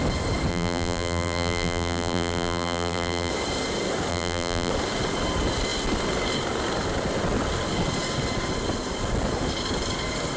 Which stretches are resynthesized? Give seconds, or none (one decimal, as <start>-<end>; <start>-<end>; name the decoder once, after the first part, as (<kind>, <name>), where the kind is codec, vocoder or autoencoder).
0.5-3.3 (vocoder, BigVGAN v2); 4.1-4.7